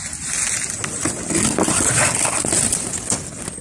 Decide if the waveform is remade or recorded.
recorded